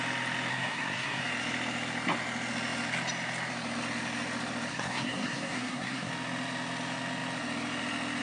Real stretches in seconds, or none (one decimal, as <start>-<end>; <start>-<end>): 0.0-0.5; 1.2-4.7; 6.1-8.2